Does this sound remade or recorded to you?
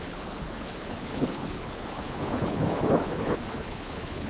remade